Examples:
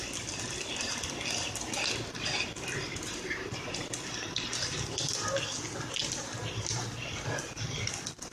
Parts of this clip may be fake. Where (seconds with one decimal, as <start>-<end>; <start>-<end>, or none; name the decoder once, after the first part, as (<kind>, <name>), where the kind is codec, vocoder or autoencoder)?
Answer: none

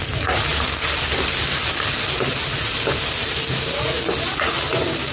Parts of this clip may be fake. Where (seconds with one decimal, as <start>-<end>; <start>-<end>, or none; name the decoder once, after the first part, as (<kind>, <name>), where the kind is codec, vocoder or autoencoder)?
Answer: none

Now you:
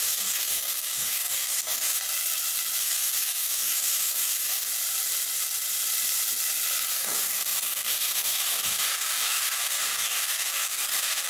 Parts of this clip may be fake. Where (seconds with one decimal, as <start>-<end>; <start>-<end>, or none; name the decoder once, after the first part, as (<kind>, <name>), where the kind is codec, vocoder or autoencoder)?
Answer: 0.0-2.0 (codec, DAC); 2.8-4.7; 6.9-11.3

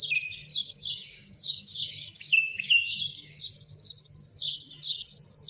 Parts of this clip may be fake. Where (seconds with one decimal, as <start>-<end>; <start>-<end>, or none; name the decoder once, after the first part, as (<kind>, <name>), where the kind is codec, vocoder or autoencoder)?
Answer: 0.5-3.4 (codec, DAC)

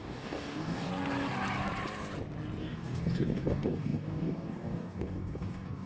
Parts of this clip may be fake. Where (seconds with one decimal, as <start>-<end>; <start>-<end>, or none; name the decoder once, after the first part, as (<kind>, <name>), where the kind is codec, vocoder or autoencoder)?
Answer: 0.0-0.9 (codec, DAC); 2.6-5.9

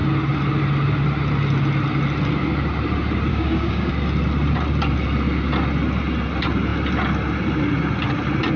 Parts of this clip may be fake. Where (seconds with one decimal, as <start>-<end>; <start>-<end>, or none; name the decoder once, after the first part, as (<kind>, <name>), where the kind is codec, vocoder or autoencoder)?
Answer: 3.3-3.9 (codec, DAC)

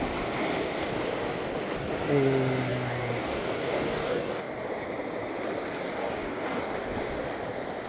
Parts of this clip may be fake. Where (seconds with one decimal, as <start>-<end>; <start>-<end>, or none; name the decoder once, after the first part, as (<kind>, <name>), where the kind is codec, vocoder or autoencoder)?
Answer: 2.7-4.5 (codec, DAC); 6.0-6.6

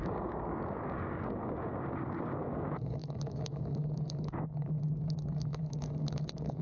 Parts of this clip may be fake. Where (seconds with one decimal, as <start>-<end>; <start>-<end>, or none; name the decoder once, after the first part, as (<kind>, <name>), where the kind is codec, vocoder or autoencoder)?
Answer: 0.0-6.6 (codec, DAC)